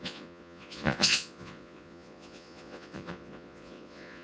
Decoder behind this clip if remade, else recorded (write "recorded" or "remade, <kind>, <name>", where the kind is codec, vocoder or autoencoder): remade, vocoder, Vocos